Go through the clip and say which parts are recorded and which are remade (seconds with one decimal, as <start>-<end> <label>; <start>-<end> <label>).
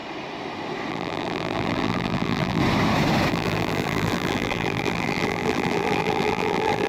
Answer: 0.0-0.9 recorded; 0.9-2.6 remade; 2.6-3.3 recorded; 3.3-6.9 remade